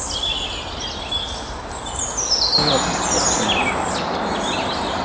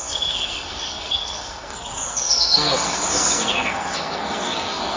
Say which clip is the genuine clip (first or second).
first